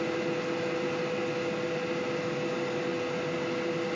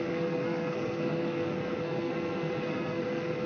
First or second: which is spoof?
second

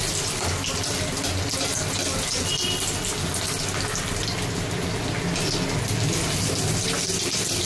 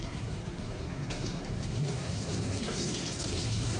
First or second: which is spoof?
second